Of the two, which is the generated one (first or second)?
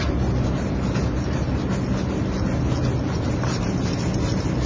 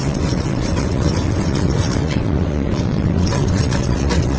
second